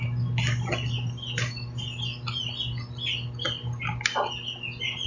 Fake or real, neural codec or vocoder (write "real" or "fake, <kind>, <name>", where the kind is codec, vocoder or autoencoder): real